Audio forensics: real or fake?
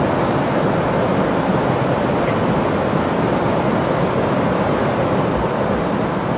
real